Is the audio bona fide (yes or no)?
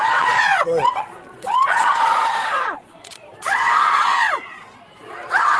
no